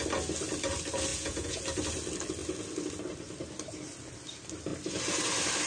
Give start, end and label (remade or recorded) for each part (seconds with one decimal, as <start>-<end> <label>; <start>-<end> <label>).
0.0-1.1 recorded; 1.1-1.6 remade; 1.6-5.7 recorded